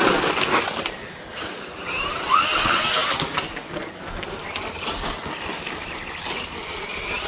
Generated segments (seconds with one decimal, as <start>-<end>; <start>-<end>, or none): none